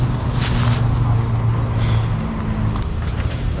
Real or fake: real